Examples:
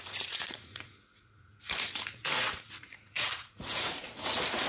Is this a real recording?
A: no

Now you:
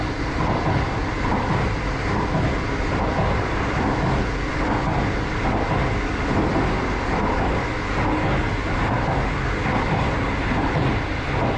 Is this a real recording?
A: yes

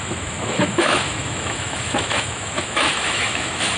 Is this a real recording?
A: no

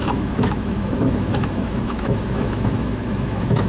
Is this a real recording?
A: no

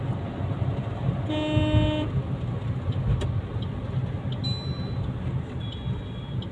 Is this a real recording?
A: yes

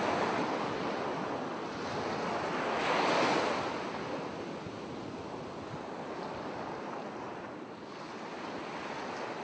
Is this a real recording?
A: yes